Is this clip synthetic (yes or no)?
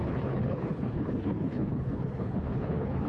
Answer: yes